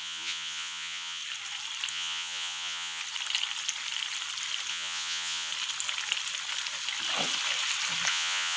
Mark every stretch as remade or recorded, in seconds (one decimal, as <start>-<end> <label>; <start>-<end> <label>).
0.0-1.2 remade; 1.2-1.9 recorded; 1.9-3.0 remade; 3.0-4.7 recorded; 4.7-5.5 remade; 5.5-8.1 recorded; 8.1-8.6 remade

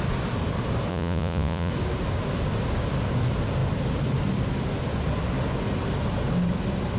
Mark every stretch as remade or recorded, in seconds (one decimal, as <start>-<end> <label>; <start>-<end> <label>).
0.0-0.9 recorded; 0.9-1.7 remade; 1.7-7.0 recorded

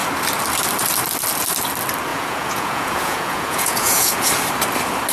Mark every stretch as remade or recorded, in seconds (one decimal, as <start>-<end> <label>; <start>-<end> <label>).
0.0-2.1 recorded; 2.1-4.3 remade; 4.3-5.1 recorded